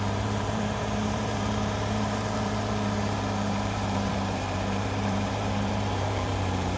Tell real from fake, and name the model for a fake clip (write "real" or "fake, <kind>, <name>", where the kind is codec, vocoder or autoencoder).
fake, vocoder, BigVGAN v2